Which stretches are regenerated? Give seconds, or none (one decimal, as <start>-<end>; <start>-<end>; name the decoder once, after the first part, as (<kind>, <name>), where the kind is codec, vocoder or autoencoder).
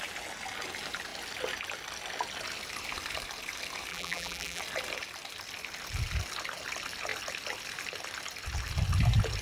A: 3.9-4.6 (vocoder, BigVGAN v2)